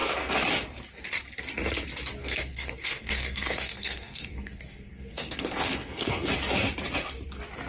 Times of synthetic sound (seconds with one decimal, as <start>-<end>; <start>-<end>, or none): 2.2-6.3